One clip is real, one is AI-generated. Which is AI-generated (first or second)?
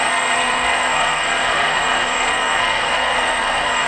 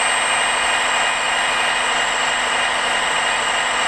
first